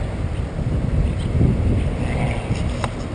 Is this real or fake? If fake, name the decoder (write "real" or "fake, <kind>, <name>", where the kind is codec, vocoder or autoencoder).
real